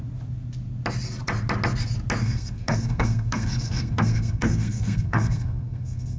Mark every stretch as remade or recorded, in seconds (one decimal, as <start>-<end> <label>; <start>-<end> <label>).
0.0-2.2 recorded; 2.2-6.2 remade